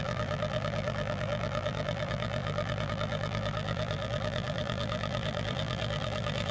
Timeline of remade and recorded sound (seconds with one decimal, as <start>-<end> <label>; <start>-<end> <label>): 0.0-6.5 remade